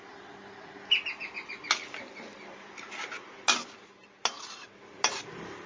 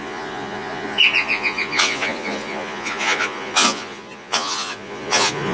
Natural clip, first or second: first